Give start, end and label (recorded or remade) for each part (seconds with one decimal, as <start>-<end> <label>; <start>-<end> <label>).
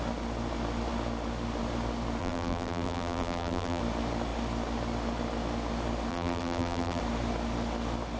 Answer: 0.0-2.2 recorded; 2.2-3.8 remade; 3.8-6.1 recorded; 6.1-7.0 remade; 7.0-8.2 recorded